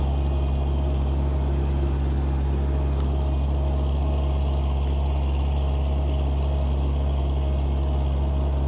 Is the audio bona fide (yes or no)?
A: yes